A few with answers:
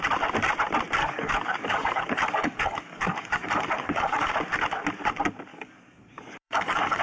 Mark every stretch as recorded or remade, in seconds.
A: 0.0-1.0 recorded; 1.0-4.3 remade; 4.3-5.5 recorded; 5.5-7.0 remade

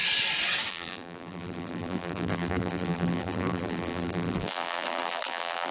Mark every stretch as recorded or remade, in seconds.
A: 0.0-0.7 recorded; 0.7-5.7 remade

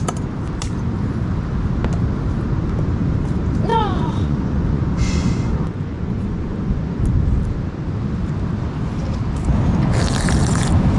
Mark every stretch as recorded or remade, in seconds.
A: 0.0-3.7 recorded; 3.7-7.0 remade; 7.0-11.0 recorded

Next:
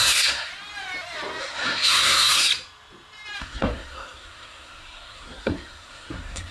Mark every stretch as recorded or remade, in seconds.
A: 0.0-0.5 remade; 0.5-1.4 recorded; 1.4-2.5 remade; 2.5-3.4 recorded; 3.4-6.5 remade

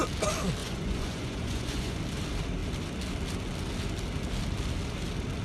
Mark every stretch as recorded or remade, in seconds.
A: 0.0-0.6 recorded; 0.6-2.0 remade; 2.0-5.4 recorded

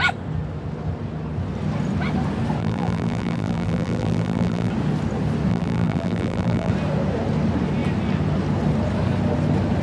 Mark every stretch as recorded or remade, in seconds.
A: 0.0-2.6 recorded; 2.6-4.7 remade; 4.7-5.5 recorded; 5.5-6.7 remade; 6.7-9.8 recorded

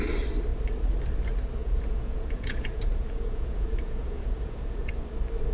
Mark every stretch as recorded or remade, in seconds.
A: 0.0-1.6 recorded; 1.6-4.9 remade; 4.9-5.5 recorded